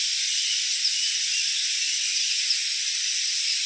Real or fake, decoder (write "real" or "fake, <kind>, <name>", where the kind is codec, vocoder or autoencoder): real